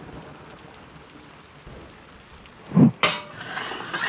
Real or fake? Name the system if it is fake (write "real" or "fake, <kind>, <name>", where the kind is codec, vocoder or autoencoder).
real